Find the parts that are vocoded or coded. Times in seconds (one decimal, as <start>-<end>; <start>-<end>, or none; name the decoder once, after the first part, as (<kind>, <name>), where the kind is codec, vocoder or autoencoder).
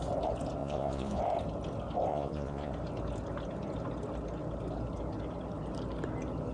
0.6-1.2 (vocoder, Vocos); 2.1-2.7